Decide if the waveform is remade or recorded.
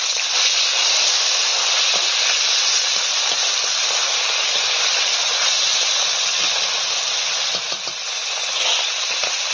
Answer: recorded